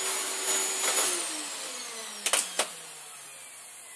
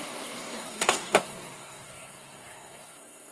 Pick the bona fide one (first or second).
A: first